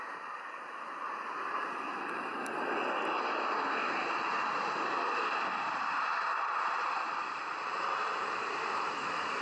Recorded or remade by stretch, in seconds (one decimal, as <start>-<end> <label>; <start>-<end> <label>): 0.0-2.3 remade; 2.3-5.9 recorded; 5.9-9.4 remade

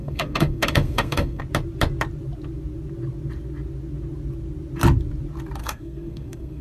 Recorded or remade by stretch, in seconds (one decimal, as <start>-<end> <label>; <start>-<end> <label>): 0.0-1.4 remade; 1.4-5.6 recorded; 5.6-6.6 remade